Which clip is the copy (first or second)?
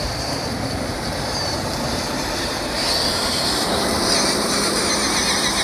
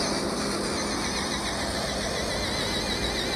first